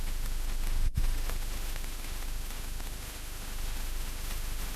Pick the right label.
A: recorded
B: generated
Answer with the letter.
B